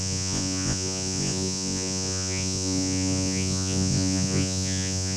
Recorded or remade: remade